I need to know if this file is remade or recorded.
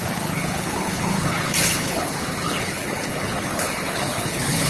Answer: remade